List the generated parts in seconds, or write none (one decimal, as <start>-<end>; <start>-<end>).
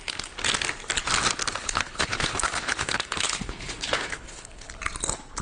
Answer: 1.6-4.7